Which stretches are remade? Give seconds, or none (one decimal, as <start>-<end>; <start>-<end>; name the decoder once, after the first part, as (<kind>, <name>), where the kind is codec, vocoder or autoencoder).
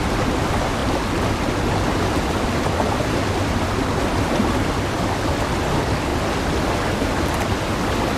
none